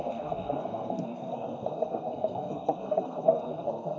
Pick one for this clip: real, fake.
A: fake